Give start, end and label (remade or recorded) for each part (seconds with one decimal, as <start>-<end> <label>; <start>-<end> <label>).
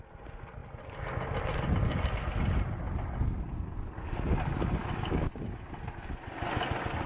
0.0-4.8 recorded; 4.8-5.6 remade; 5.6-7.1 recorded